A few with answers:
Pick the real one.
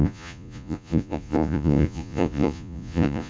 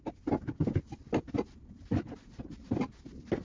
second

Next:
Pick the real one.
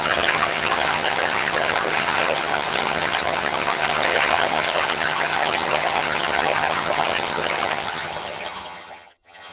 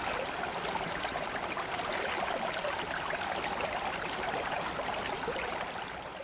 second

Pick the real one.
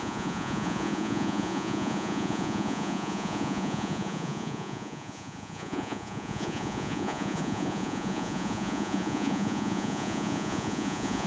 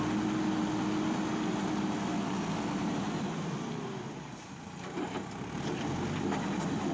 second